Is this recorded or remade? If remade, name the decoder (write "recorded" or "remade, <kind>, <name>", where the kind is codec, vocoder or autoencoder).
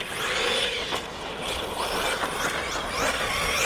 recorded